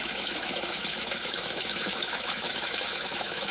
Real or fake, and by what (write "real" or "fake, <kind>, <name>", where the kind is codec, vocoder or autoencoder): fake, autoencoder, DAC-VAE